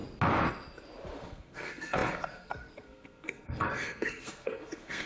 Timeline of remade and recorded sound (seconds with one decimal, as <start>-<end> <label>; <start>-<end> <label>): 0.0-1.2 recorded; 1.2-5.1 remade